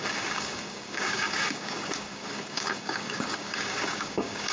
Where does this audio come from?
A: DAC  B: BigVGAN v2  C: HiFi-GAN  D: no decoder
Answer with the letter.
A